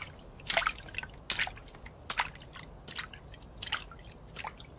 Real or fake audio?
real